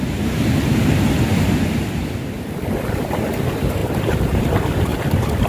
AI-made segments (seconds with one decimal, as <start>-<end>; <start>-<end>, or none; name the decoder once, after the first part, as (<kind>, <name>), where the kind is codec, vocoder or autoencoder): 1.3-1.8 (vocoder, BigVGAN v2); 3.8-4.4

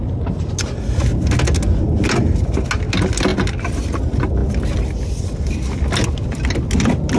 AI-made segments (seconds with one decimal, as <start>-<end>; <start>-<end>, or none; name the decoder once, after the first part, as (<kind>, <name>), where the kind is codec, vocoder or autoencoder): 4.4-5.5 (vocoder, BigVGAN v2)